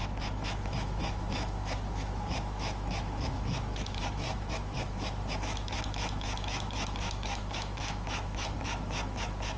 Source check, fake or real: fake